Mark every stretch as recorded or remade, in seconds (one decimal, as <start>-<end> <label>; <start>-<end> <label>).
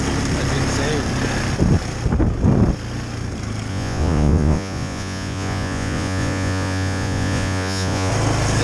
0.0-3.7 recorded; 3.7-8.1 remade; 8.1-8.6 recorded